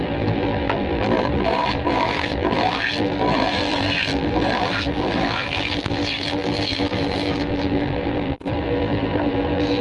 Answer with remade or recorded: remade